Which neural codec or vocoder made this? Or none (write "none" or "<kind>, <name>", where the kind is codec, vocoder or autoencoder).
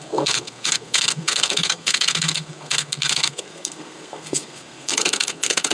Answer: codec, SNAC